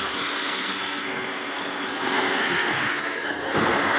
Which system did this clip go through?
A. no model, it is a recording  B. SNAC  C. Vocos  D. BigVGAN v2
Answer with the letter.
B